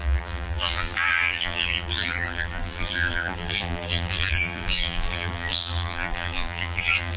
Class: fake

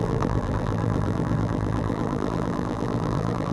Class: fake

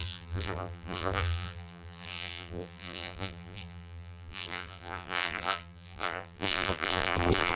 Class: fake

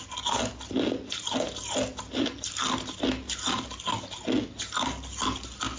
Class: real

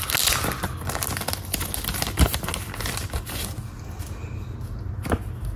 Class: real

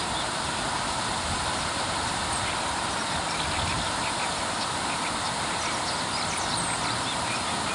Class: real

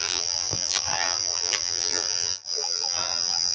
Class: fake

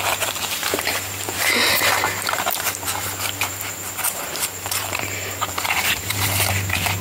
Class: fake